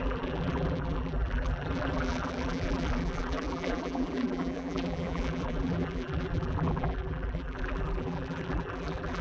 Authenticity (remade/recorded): remade